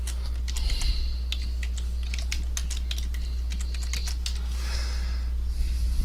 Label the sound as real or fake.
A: real